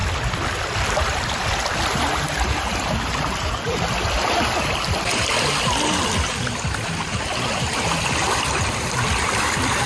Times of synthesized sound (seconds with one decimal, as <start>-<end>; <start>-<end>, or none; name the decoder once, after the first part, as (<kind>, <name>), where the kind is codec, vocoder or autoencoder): 0.8-1.4 (vocoder, BigVGAN v2); 5.5-9.9